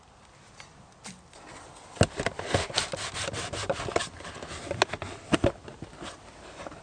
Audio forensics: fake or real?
real